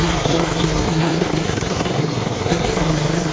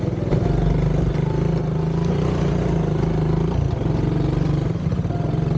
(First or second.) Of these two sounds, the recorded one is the second